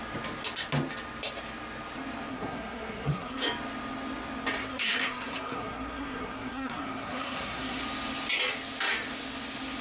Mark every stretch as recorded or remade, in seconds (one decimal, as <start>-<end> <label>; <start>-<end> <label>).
0.0-2.3 recorded; 2.3-3.4 remade; 3.4-4.6 recorded; 4.6-7.8 remade; 7.8-9.8 recorded